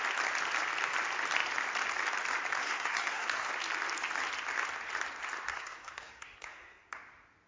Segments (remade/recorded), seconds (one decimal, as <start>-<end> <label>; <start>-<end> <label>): 0.0-2.6 recorded; 2.6-3.5 remade; 3.5-5.5 recorded; 5.5-6.9 remade; 6.9-7.5 recorded